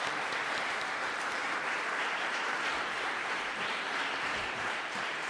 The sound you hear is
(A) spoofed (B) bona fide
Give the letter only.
A